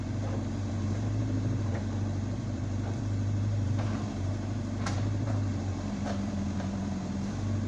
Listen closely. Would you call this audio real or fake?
fake